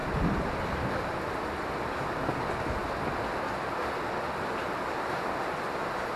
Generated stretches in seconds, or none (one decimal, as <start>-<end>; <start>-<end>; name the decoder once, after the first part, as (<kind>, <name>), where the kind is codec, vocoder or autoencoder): none